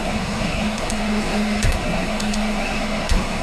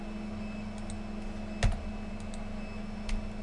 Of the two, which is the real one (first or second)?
second